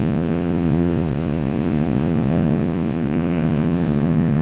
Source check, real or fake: fake